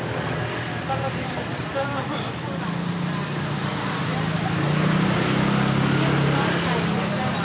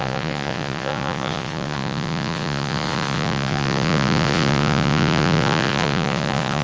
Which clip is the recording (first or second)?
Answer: first